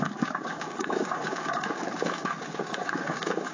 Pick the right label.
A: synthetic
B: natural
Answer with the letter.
A